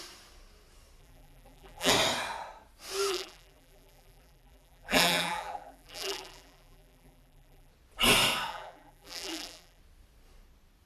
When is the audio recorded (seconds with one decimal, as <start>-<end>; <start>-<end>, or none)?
0.0-1.0; 1.9-3.1; 7.7-8.5; 9.8-10.9